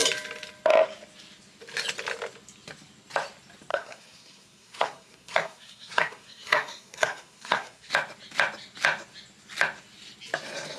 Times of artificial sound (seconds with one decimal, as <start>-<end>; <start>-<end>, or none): 3.7-7.9